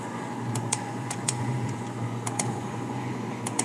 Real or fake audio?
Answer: fake